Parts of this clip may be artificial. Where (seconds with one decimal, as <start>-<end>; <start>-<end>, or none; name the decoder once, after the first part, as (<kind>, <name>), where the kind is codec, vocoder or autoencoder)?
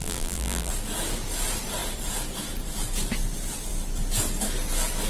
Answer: 0.0-0.7 (vocoder, BigVGAN v2)